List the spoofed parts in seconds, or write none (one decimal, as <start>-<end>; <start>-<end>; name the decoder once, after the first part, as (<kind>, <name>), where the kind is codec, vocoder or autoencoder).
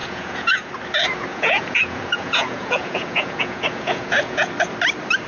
0.0-0.7 (vocoder, Vocos); 1.3-4.5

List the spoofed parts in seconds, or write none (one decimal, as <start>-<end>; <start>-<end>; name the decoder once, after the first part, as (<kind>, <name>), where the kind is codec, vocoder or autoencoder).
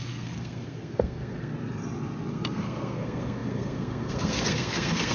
0.0-1.5 (codec, SNAC); 2.3-5.1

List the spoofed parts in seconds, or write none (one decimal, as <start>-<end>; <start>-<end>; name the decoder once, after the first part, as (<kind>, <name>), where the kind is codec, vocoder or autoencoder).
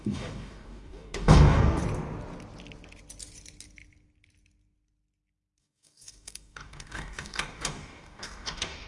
0.0-1.8 (codec, DAC); 5.6-8.9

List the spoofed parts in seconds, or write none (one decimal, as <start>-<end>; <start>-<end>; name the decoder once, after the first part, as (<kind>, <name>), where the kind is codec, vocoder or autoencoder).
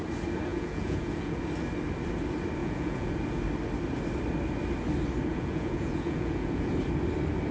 0.5-1.4 (vocoder, Vocos); 2.6-3.1; 5.3-6.7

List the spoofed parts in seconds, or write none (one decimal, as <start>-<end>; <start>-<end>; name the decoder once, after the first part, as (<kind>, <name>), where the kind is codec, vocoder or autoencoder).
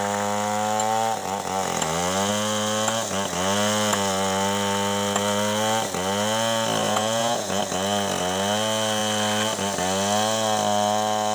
6.8-7.6 (vocoder, Vocos)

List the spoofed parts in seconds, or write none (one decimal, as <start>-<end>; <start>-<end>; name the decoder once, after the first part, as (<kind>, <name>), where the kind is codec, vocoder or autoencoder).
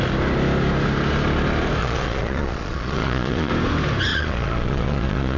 1.8-3.5 (vocoder, Vocos); 4.1-5.4